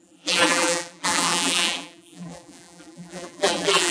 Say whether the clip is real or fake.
fake